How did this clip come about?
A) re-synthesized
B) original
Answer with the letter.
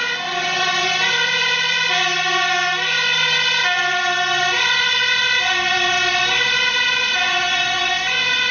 B